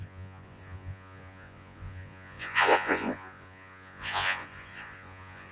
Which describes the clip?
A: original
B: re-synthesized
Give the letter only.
B